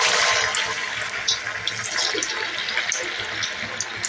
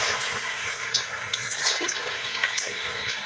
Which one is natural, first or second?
first